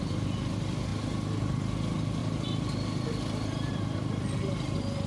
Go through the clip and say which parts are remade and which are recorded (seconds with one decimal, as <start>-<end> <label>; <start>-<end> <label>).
0.0-2.2 recorded; 2.2-5.1 remade